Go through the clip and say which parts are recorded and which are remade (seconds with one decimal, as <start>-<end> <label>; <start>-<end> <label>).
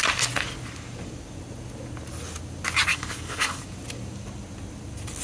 0.0-2.9 recorded; 2.9-3.6 remade; 3.6-5.2 recorded